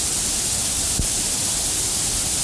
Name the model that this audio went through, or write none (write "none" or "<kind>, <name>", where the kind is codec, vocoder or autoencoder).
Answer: none